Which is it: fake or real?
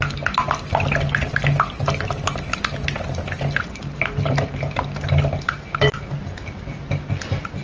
real